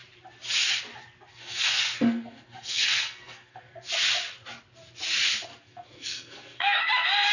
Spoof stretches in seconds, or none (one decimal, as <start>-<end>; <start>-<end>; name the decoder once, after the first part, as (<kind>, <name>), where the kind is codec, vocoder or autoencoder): 1.3-3.9 (codec, SNAC); 5.7-6.8